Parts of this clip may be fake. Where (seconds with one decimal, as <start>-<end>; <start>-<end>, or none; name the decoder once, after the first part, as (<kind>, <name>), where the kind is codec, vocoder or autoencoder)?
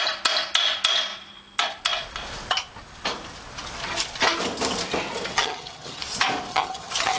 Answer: 5.3-6.0 (vocoder, HiFi-GAN); 6.5-7.2